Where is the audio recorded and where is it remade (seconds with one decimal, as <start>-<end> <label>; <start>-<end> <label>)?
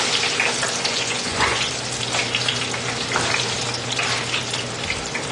0.0-0.9 recorded; 0.9-1.7 remade; 1.7-5.3 recorded